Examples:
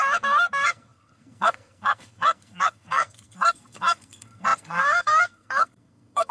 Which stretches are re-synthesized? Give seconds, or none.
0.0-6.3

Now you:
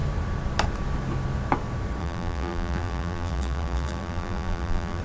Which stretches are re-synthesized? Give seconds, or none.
2.0-5.0